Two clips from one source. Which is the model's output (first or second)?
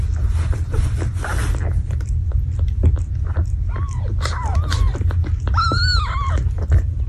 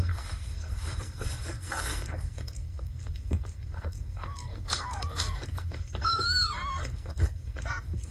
second